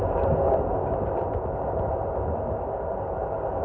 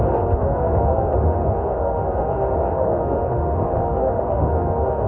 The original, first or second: first